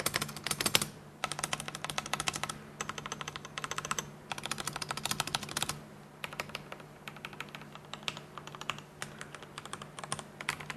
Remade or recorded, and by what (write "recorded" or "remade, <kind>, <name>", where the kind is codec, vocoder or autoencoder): recorded